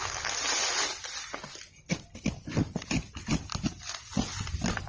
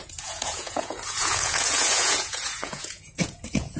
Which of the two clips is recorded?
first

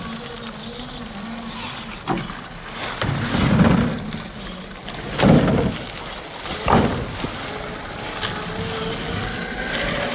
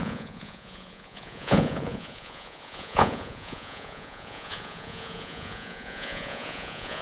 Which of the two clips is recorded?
first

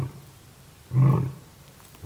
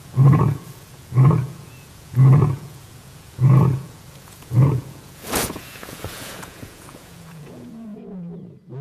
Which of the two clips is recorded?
first